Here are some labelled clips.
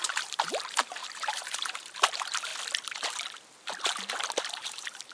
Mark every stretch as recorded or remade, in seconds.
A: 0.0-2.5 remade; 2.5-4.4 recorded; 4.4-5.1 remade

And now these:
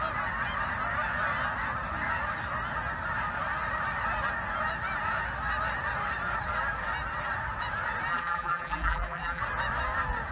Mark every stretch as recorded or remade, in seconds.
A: 0.0-8.1 recorded; 8.1-9.4 remade; 9.4-10.3 recorded

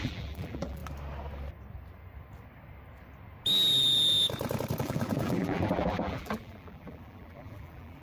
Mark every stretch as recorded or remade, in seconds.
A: 0.0-0.8 remade; 0.8-4.8 recorded; 4.8-8.0 remade

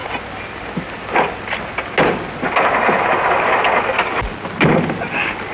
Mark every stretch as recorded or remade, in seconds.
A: 0.0-5.5 recorded

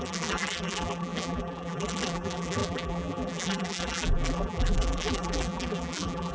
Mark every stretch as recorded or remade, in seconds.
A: 0.0-6.3 remade

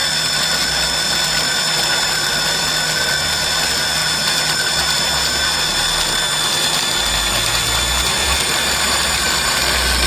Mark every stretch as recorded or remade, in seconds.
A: 0.0-8.2 recorded; 8.2-9.6 remade; 9.6-10.1 recorded

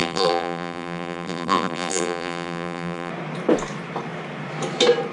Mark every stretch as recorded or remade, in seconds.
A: 0.0-3.1 remade; 3.1-5.1 recorded

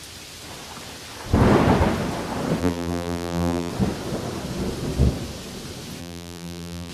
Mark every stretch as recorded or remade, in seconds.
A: 0.0-2.6 recorded; 2.6-3.7 remade; 3.7-6.0 recorded; 6.0-6.9 remade